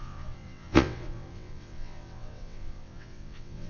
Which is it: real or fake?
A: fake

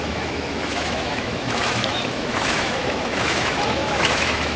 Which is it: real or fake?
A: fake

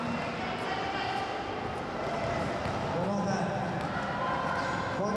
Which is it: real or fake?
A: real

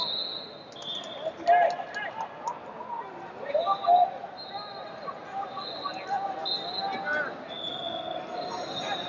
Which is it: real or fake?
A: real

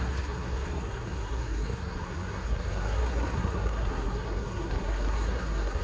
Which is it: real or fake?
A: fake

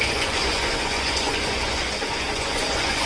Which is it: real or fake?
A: fake